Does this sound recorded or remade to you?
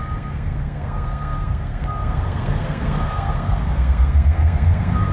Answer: remade